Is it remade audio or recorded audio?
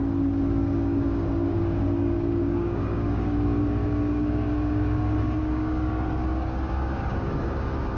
remade